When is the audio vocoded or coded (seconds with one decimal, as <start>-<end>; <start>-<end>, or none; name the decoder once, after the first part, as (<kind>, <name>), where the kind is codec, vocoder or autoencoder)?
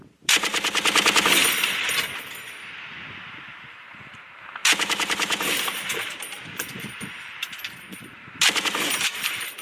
0.0-0.5 (vocoder, BigVGAN v2); 4.0-9.6